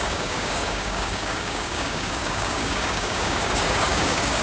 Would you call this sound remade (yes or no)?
yes